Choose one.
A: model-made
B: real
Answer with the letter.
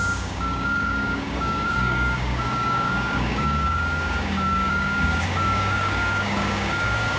A